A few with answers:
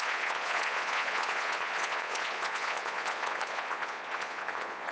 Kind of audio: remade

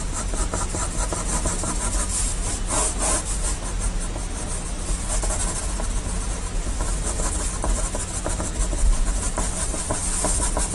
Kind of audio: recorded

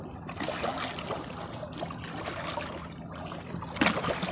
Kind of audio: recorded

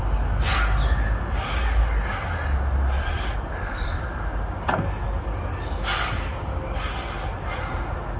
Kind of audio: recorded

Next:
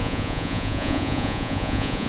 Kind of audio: remade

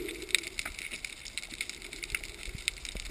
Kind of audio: recorded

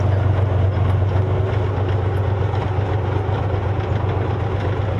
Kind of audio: recorded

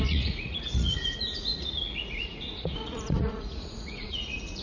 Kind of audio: remade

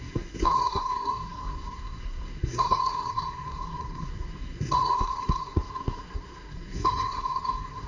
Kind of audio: remade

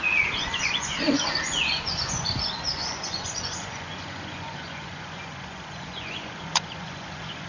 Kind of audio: remade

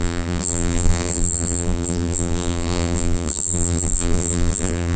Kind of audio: remade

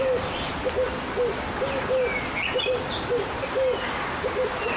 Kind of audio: recorded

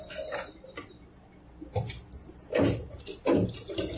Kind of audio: recorded